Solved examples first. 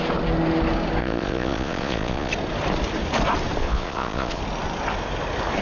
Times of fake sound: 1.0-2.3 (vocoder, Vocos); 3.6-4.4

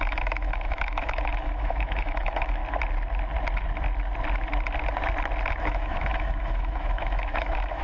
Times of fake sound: 0.0-2.6 (autoencoder, DAC-VAE); 5.6-7.8

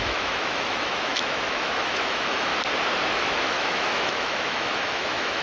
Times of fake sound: 0.0-2.5 (autoencoder, DAC-VAE); 3.1-5.4

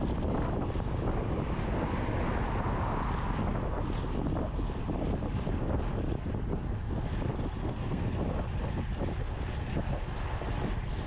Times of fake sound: 7.6-8.1 (codec, SNAC)

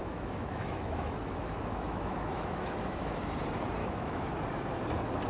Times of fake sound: 0.0-3.2 (autoencoder, DAC-VAE); 3.8-4.4

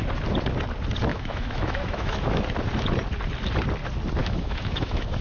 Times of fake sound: 1.1-2.4 (autoencoder, DAC-VAE); 4.2-5.2

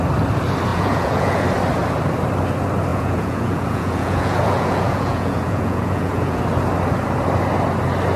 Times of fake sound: 0.7-1.4 (vocoder, Vocos); 2.9-6.4